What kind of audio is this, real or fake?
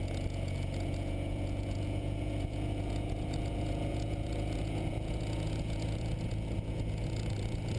fake